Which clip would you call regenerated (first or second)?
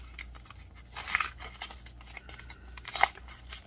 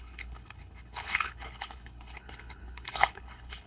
second